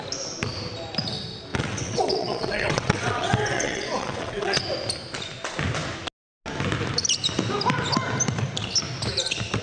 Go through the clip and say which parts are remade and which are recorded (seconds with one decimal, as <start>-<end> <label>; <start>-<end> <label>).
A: 0.0-1.5 recorded; 1.5-4.6 remade; 4.6-9.6 recorded